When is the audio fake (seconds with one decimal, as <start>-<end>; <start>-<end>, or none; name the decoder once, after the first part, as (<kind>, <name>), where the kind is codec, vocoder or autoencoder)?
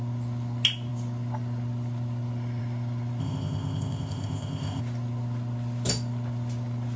3.2-4.8 (codec, ZipCodec)